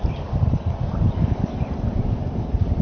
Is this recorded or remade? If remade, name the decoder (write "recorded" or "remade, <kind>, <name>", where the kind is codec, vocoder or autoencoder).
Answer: recorded